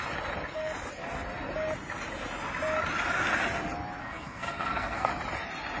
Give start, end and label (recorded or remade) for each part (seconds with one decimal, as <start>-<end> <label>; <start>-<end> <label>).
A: 0.0-4.0 recorded; 4.0-5.1 remade; 5.1-5.8 recorded